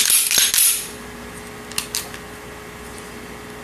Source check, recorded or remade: recorded